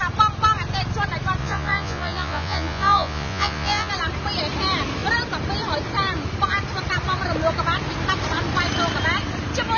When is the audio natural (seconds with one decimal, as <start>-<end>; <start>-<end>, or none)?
0.0-1.4; 3.9-9.8